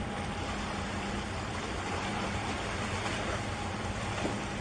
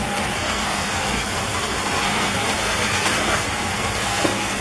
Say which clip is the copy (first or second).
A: second